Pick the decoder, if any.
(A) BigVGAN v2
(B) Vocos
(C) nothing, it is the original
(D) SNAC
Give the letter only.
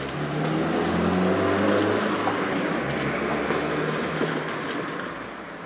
C